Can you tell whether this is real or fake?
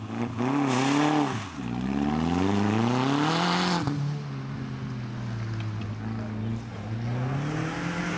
real